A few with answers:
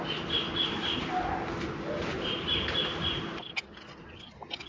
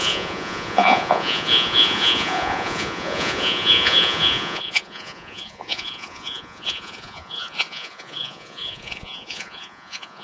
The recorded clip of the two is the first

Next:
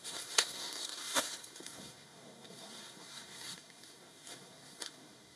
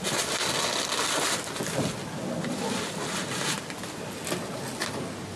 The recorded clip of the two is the second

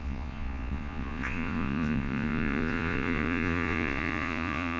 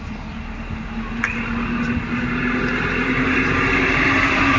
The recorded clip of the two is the second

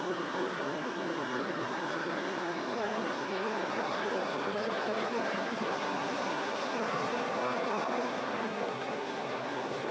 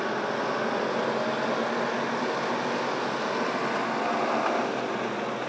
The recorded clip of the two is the second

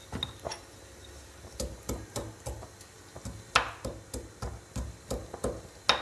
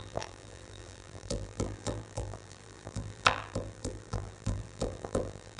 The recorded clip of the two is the first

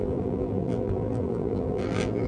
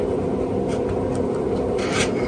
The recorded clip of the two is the second